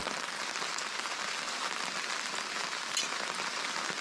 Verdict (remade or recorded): recorded